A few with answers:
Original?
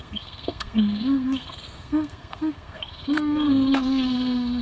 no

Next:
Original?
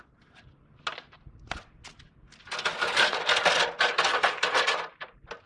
yes